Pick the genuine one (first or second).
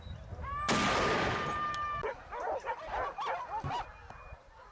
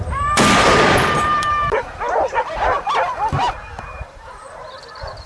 first